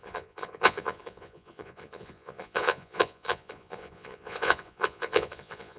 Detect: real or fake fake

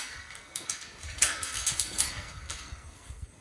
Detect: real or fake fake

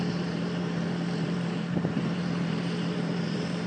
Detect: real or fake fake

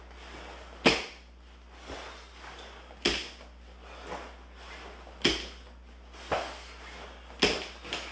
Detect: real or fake real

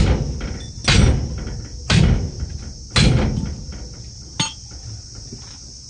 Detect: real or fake real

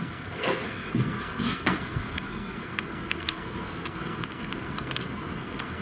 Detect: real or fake fake